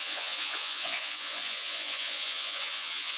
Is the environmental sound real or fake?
fake